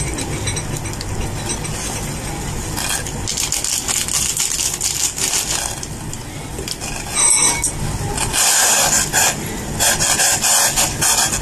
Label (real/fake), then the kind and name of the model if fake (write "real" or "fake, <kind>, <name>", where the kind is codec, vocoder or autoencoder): real